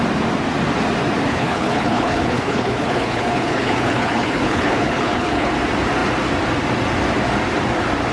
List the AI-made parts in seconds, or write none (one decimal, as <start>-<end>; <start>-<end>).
1.3-5.5